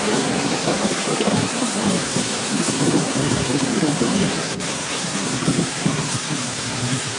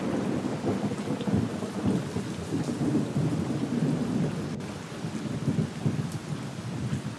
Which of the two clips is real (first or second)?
second